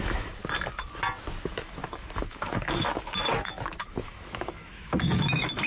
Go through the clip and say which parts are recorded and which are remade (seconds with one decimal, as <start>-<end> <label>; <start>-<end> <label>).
0.0-0.4 remade; 0.4-1.4 recorded; 1.4-5.7 remade